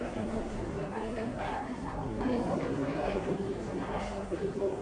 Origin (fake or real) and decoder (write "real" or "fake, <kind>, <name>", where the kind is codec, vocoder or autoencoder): fake, codec, SNAC